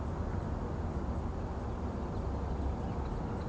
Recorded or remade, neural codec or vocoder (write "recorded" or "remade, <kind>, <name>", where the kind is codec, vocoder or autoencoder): recorded